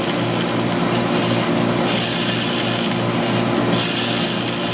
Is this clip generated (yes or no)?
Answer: no